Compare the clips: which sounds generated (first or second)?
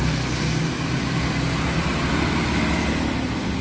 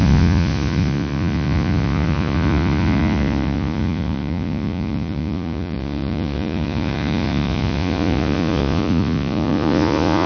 second